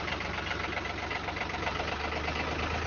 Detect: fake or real real